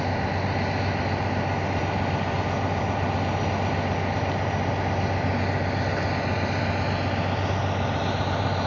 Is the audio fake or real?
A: real